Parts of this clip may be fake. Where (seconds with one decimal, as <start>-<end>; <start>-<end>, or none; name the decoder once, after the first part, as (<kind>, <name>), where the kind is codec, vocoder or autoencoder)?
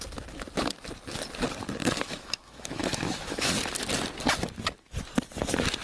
1.8-3.5 (autoencoder, DAC-VAE)